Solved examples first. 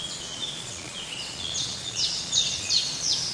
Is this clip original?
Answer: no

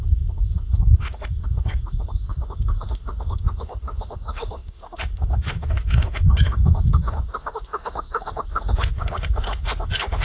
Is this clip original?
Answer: no